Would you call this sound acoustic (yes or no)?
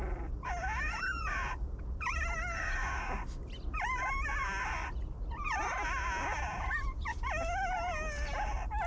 yes